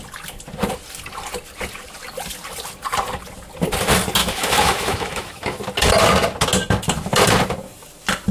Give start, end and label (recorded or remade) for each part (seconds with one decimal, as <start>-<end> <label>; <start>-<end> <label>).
0.0-4.2 recorded; 4.2-5.6 remade; 5.6-8.3 recorded